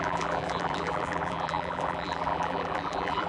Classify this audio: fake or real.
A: fake